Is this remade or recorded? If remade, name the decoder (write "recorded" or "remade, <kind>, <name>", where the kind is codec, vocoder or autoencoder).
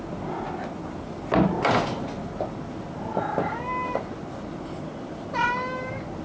recorded